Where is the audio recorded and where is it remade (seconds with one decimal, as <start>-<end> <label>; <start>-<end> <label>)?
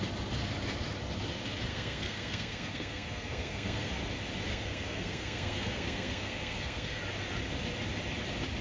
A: 0.0-1.7 recorded; 1.7-4.0 remade; 4.0-4.5 recorded; 4.5-7.0 remade; 7.0-8.6 recorded